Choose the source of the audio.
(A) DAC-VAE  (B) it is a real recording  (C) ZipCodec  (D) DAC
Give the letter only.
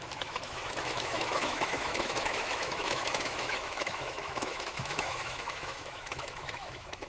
A